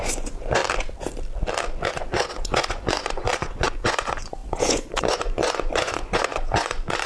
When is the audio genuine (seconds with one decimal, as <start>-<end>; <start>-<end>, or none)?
0.6-1.9